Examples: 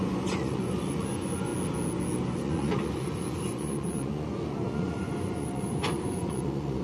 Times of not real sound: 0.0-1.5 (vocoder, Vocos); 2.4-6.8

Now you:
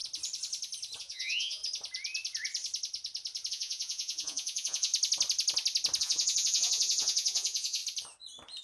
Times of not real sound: 1.0-1.6 (vocoder, Vocos); 3.5-4.9; 6.0-7.8

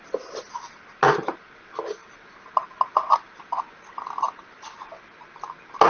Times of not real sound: none

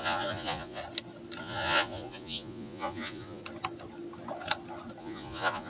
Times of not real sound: 0.0-0.8 (vocoder, Vocos); 1.4-3.4; 5.0-5.7

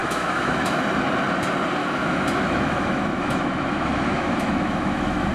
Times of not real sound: 0.0-0.8 (autoencoder, DAC-VAE); 1.8-5.3

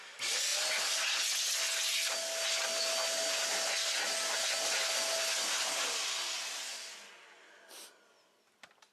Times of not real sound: none